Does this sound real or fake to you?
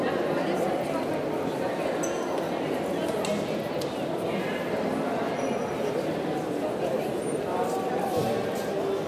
real